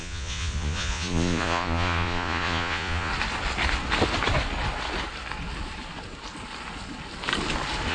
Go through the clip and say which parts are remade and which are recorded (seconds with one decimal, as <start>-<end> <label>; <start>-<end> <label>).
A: 0.0-3.1 remade; 3.1-7.9 recorded